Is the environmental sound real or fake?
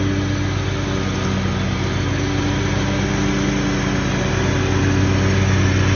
real